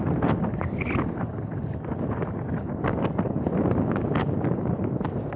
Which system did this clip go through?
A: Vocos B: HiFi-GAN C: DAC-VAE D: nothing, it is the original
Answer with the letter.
D